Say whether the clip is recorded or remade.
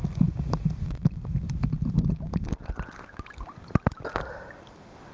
recorded